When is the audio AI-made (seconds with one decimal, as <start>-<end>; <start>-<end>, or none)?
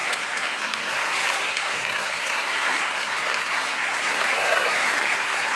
0.0-5.6